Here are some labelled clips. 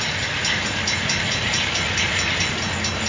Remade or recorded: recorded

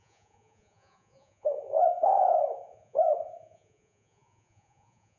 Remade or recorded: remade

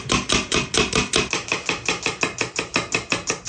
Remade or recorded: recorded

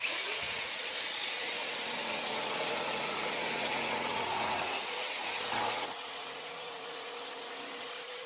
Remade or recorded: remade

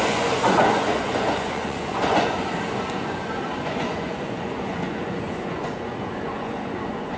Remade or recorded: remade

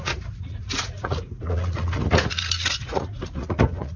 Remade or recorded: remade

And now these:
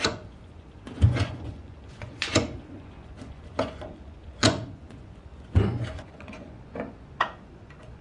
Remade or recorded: remade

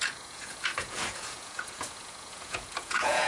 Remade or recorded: remade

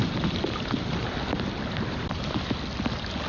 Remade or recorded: recorded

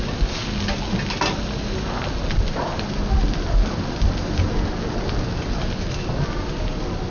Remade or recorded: recorded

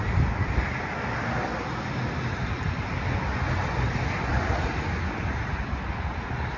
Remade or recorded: recorded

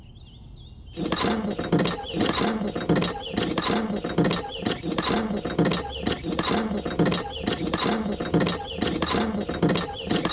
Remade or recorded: recorded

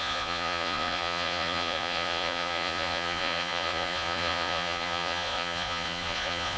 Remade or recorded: remade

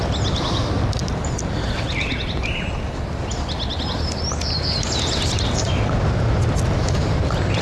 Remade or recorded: recorded